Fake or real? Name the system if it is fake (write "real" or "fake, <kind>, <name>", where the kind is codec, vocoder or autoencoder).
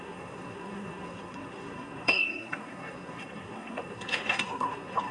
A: fake, codec, SNAC